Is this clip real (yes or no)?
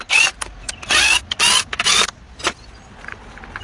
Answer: yes